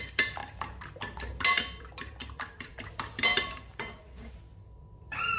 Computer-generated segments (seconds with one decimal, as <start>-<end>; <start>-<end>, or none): 0.0-0.4; 1.8-5.4